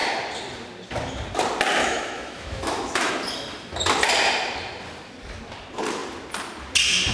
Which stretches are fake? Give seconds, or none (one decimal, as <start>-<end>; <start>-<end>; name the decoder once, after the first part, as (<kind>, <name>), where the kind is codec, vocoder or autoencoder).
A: 1.8-3.1 (autoencoder, DAC-VAE)